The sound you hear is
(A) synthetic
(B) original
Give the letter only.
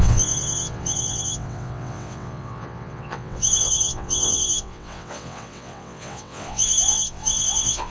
A